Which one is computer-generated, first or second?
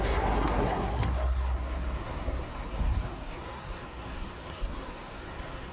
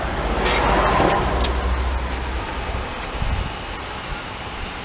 first